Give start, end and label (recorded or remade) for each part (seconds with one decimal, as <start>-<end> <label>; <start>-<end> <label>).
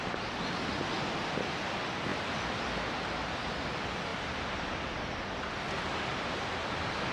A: 0.0-4.1 recorded; 4.1-5.5 remade; 5.5-7.1 recorded